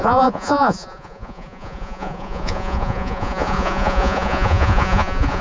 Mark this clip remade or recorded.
remade